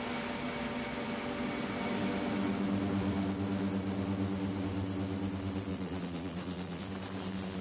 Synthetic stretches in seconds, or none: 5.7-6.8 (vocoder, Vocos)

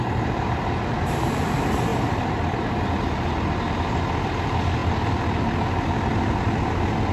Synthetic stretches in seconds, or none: none